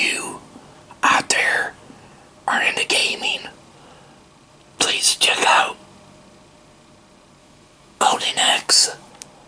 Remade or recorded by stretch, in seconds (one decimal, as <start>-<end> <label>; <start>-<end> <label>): 0.0-7.4 recorded; 7.4-9.1 remade; 9.1-9.5 recorded